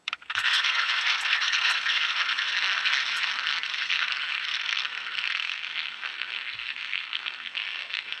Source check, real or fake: fake